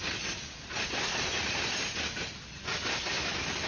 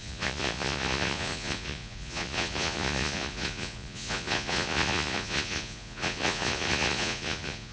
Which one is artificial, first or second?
second